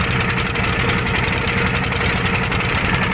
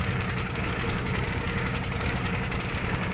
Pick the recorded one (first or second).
first